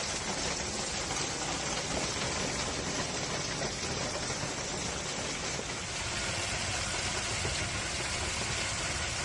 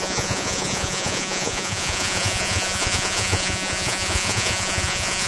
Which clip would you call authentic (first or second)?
first